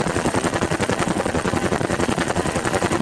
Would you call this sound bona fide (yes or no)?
no